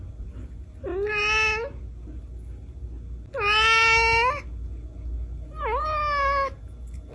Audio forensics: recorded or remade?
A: recorded